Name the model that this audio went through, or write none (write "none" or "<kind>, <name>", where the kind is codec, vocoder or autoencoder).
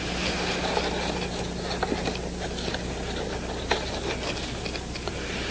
none